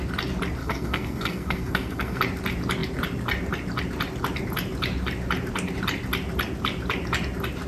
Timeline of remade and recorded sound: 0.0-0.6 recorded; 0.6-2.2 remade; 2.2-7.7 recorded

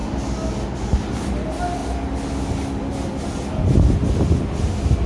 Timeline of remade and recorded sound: 0.0-5.1 recorded

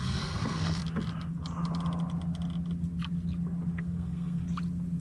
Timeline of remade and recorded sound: 0.0-0.8 remade; 0.8-3.8 recorded; 3.8-4.4 remade; 4.4-5.0 recorded